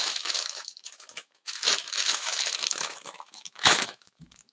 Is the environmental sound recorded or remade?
remade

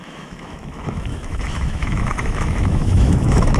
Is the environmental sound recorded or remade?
remade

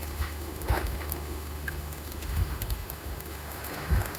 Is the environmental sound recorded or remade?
remade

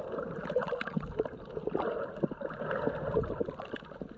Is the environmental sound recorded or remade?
recorded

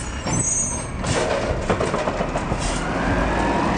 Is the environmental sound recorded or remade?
recorded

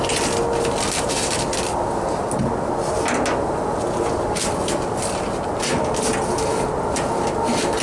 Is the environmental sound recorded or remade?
recorded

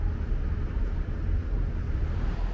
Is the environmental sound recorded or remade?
recorded